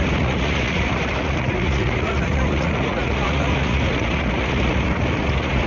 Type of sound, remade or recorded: remade